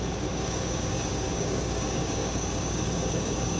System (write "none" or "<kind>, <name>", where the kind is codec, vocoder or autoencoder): codec, DAC